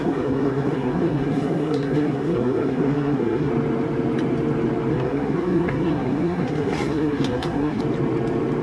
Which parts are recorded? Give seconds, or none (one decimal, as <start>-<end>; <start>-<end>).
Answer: 3.5-4.9; 7.8-8.6